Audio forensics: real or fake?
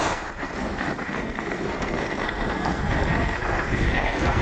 fake